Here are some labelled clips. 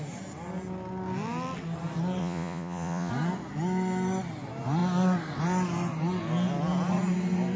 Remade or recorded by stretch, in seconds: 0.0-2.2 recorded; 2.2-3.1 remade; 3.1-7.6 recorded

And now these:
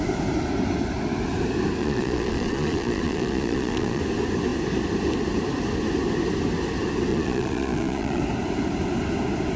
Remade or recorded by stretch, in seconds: 0.0-1.8 recorded; 1.8-4.0 remade; 4.0-7.1 recorded; 7.1-8.2 remade; 8.2-9.6 recorded

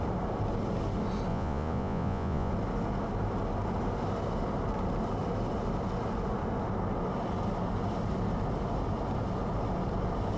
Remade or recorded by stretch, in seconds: 0.0-1.3 recorded; 1.3-2.5 remade; 2.5-10.4 recorded

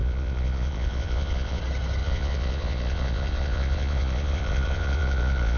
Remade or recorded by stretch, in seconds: 0.0-1.6 remade; 1.6-2.0 recorded; 2.0-5.6 remade

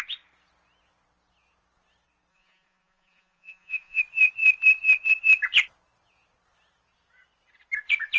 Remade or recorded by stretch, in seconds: 0.0-2.3 recorded; 2.3-4.0 remade; 4.0-8.2 recorded